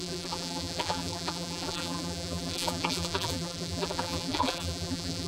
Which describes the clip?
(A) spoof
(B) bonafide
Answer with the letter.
A